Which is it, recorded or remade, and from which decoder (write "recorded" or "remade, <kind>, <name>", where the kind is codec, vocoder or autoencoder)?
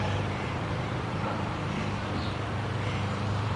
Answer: remade, vocoder, BigVGAN v2